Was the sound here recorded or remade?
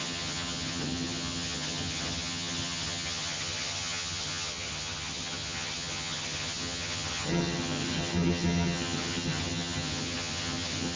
remade